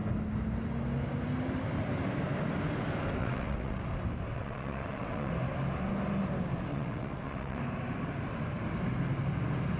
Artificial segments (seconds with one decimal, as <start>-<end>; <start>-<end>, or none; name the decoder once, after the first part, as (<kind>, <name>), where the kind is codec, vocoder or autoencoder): 3.2-3.8 (vocoder, WaveNeXt); 4.3-5.3; 6.7-7.6